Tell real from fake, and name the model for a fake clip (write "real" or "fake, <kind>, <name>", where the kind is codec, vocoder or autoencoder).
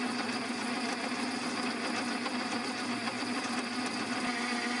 real